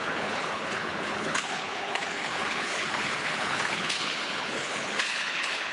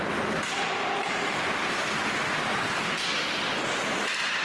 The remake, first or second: first